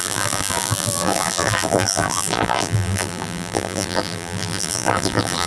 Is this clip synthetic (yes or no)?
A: yes